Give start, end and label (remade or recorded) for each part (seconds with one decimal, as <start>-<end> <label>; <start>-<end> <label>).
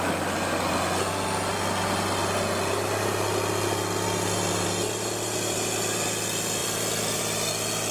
0.0-6.6 recorded; 6.6-7.5 remade; 7.5-7.9 recorded